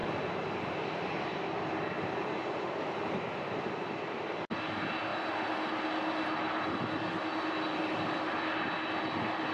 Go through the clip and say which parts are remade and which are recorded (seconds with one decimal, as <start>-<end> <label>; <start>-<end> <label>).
0.0-9.5 recorded